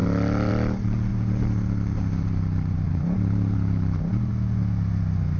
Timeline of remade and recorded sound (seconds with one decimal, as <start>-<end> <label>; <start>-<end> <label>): 0.0-1.1 recorded; 1.1-4.3 remade; 4.3-5.4 recorded